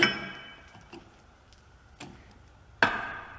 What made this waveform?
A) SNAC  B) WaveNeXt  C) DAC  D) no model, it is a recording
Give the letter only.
D